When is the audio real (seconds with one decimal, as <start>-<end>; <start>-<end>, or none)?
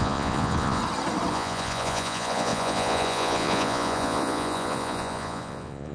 0.8-1.3